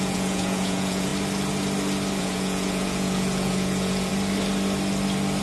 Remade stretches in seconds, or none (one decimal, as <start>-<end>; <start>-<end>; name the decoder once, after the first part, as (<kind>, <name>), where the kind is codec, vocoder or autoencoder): 0.0-1.1 (vocoder, Vocos); 2.2-4.1